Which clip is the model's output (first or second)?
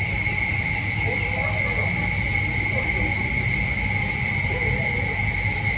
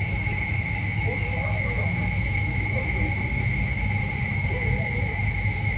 second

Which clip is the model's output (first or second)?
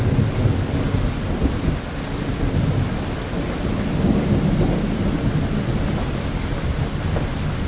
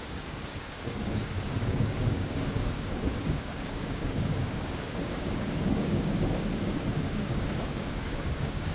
second